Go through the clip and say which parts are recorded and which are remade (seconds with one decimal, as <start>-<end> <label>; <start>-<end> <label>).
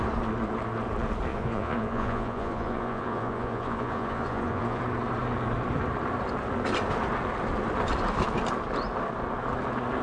0.0-1.3 recorded; 1.3-4.8 remade; 4.8-10.0 recorded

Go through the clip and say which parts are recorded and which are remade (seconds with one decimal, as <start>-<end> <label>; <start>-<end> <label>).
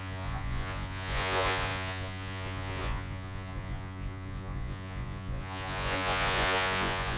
0.0-7.2 remade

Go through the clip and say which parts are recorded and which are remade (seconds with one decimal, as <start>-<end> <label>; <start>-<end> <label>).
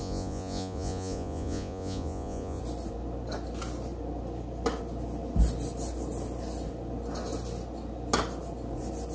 0.0-2.6 remade; 2.6-9.1 recorded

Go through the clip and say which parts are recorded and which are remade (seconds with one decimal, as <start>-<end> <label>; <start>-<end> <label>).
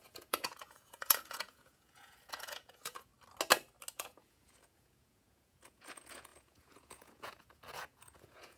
0.0-3.1 remade; 3.1-3.9 recorded; 3.9-8.6 remade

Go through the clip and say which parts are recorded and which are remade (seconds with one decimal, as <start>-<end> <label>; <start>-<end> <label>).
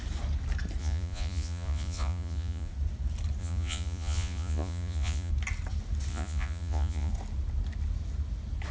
0.0-0.8 recorded; 0.8-2.7 remade; 2.7-3.4 recorded; 3.4-5.3 remade; 5.3-6.1 recorded; 6.1-7.1 remade; 7.1-8.7 recorded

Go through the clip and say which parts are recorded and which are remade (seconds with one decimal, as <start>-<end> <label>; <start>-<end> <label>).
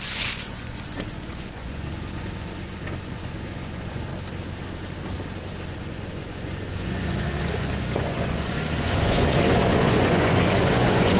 0.0-4.1 remade; 4.1-5.7 recorded; 5.7-11.2 remade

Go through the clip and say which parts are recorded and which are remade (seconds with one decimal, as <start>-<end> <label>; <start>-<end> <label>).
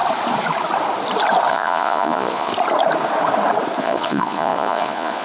0.0-1.5 recorded; 1.5-2.5 remade; 2.5-3.8 recorded; 3.8-5.2 remade